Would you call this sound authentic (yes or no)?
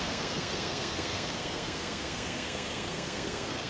no